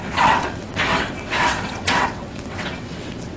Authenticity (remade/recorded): remade